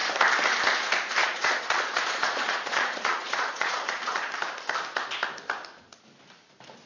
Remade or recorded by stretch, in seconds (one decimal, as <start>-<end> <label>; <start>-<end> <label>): 0.0-1.2 recorded; 1.2-4.3 remade; 4.3-6.9 recorded

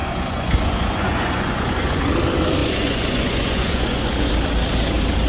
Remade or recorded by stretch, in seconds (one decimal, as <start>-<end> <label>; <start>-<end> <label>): 0.0-2.0 remade; 2.0-2.6 recorded; 2.6-4.3 remade; 4.3-5.3 recorded